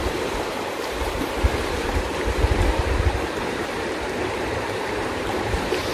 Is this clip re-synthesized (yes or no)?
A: yes